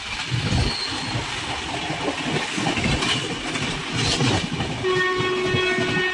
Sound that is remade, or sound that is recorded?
recorded